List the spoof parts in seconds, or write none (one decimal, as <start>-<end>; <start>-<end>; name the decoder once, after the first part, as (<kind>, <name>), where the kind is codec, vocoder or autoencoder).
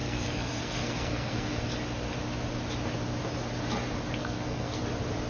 0.0-1.6 (codec, SNAC); 4.2-4.8